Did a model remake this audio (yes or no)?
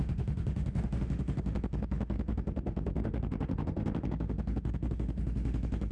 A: yes